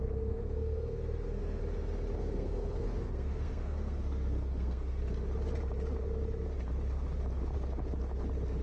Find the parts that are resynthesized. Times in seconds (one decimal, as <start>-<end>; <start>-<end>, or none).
0.0-1.6; 2.2-5.0